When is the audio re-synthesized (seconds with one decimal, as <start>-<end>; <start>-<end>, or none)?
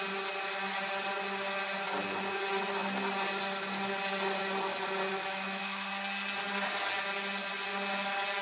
5.1-5.9